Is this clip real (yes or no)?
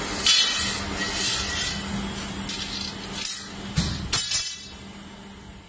yes